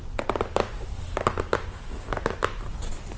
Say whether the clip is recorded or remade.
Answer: recorded